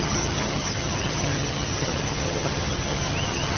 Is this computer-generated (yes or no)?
yes